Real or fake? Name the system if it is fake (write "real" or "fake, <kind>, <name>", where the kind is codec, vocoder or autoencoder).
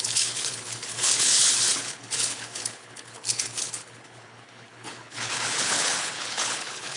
fake, codec, HILCodec